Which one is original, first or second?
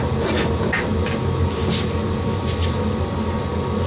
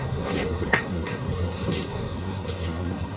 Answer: first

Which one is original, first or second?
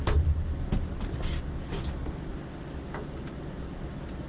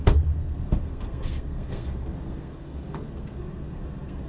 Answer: first